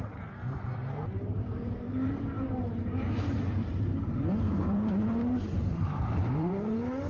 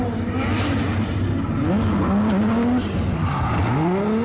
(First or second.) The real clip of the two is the second